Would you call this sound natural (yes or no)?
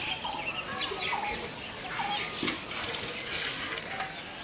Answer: yes